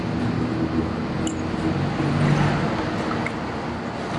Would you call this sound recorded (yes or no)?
yes